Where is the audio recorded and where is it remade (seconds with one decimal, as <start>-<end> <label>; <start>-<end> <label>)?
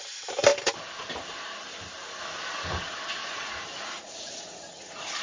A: 0.0-3.2 recorded; 3.2-5.2 remade